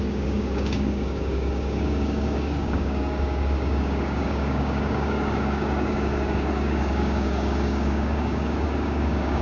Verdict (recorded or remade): remade